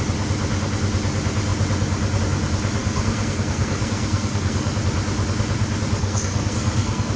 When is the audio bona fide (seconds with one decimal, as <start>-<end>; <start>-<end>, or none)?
0.0-2.8; 4.7-6.0